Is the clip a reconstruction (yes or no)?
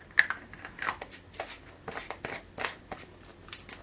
no